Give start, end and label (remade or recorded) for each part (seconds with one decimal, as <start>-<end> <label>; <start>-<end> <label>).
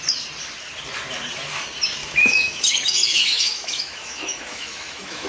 0.0-2.0 recorded; 2.0-5.3 remade